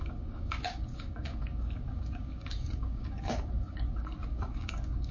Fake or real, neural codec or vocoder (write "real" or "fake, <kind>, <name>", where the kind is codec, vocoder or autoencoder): fake, codec, DAC